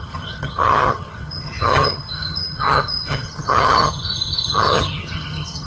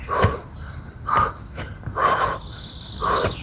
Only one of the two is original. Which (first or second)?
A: second